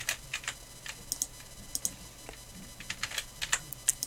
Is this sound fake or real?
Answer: real